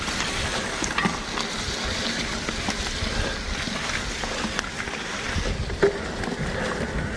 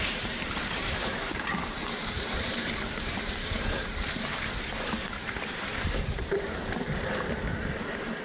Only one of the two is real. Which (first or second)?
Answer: first